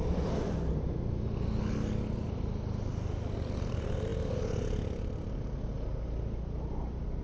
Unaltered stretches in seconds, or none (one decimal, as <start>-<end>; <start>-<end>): 0.0-7.2